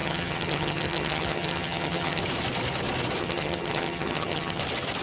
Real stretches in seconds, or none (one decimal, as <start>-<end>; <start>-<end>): 2.2-3.2; 4.6-5.0